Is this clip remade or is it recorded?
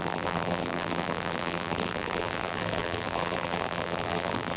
remade